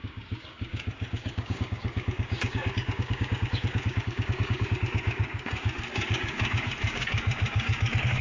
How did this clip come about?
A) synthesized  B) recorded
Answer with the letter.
A